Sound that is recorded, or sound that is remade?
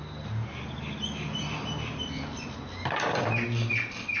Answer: recorded